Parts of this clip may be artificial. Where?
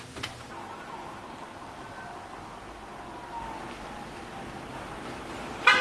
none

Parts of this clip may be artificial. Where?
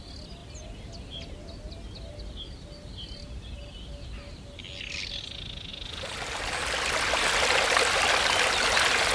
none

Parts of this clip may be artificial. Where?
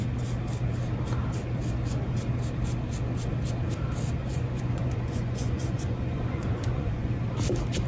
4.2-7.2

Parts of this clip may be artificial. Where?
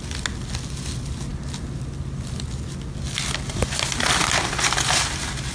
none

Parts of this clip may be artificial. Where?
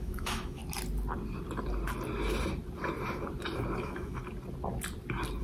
0.0-0.6; 3.8-4.2